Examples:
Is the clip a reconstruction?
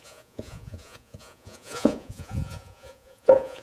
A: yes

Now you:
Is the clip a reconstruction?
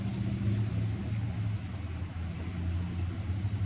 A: no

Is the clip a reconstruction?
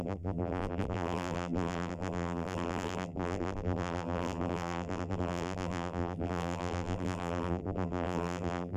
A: yes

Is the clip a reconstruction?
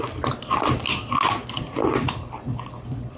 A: no